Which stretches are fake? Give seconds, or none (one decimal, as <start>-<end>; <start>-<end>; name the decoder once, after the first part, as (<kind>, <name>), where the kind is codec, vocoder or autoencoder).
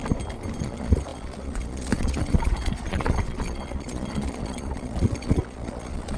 0.6-6.2 (vocoder, Vocos)